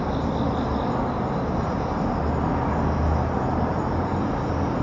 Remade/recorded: recorded